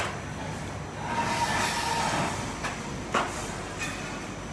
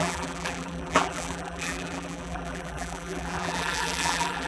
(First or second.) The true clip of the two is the first